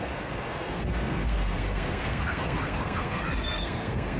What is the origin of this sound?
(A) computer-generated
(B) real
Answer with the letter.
A